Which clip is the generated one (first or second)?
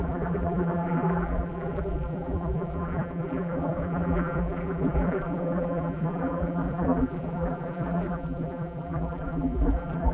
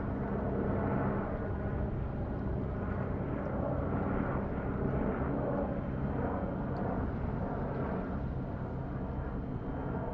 first